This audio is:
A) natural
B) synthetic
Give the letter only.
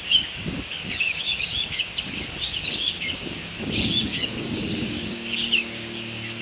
B